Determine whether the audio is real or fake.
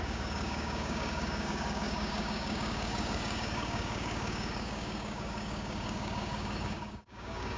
fake